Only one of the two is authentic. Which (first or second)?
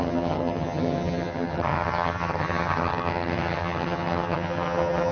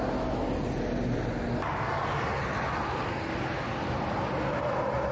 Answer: second